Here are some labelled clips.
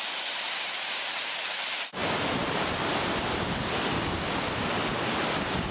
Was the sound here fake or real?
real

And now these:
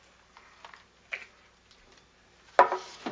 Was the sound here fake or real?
real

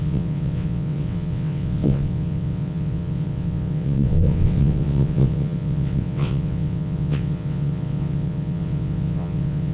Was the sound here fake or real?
fake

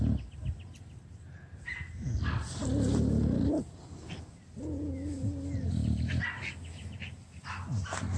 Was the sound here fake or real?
real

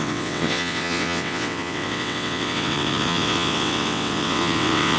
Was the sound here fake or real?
fake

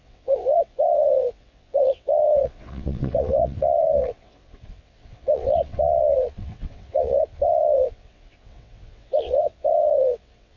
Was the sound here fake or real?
fake